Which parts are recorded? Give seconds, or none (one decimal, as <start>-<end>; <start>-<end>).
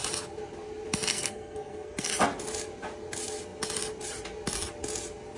0.0-1.1; 2.1-5.4